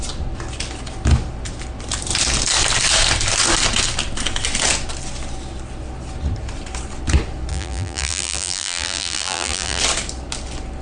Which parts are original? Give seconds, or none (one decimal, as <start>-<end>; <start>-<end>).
0.0-7.5; 9.8-10.8